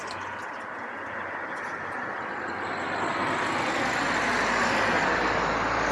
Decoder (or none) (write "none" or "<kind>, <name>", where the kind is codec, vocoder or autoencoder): none